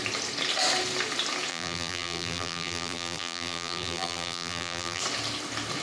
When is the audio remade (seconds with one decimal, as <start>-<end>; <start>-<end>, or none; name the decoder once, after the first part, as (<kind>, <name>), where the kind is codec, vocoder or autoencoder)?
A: 1.5-5.0 (vocoder, BigVGAN v2)